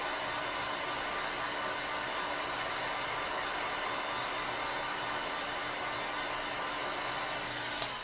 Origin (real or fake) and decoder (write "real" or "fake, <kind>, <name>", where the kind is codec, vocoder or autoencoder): real